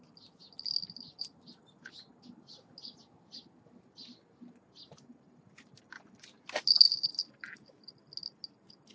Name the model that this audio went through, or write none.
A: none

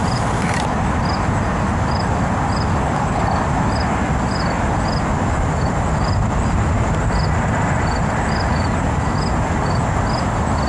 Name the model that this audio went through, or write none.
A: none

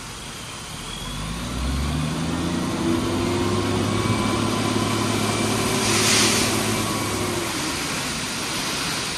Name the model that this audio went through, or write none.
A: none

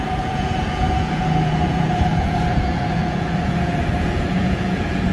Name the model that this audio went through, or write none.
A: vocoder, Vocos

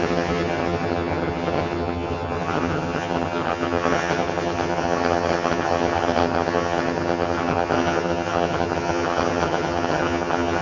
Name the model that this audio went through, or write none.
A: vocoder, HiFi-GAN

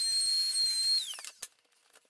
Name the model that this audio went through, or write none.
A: none